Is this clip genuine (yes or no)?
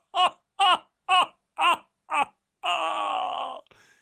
no